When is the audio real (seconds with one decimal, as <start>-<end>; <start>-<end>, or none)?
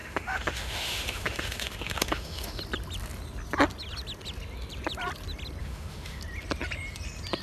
2.6-5.6; 6.2-7.4